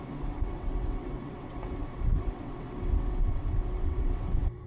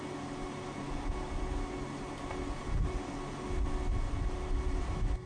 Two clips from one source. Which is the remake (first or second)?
first